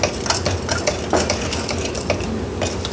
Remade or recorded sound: recorded